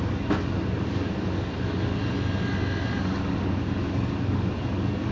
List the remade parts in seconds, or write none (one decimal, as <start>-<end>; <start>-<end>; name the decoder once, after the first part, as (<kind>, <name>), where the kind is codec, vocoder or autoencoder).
0.0-2.0 (codec, DAC); 3.0-5.1